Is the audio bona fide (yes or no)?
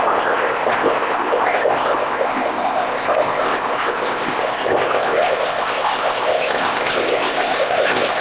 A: no